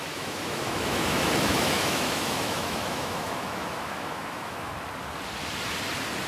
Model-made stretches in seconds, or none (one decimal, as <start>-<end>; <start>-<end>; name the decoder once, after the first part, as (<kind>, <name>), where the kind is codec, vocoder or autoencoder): 0.0-4.7 (autoencoder, DAC-VAE)

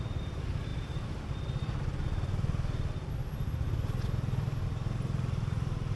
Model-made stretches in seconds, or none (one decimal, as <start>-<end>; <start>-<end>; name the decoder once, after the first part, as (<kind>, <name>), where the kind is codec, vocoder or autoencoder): none

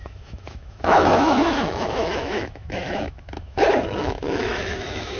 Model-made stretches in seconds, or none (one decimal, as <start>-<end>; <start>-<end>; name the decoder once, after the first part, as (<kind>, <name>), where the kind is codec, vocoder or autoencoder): 0.0-5.2 (autoencoder, DAC-VAE)

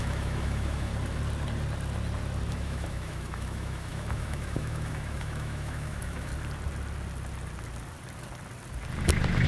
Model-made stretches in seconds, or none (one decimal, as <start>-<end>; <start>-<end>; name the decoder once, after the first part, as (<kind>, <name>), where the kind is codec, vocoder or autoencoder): 0.0-0.9 (autoencoder, DAC-VAE); 2.5-6.3

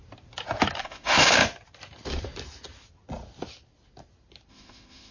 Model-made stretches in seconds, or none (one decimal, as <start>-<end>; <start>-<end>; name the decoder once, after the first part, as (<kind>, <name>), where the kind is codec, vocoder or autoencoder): 0.8-1.4 (autoencoder, DAC-VAE); 4.5-5.1

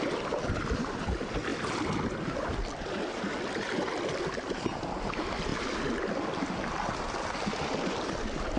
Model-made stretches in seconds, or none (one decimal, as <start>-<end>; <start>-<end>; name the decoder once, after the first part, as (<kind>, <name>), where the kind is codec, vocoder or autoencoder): none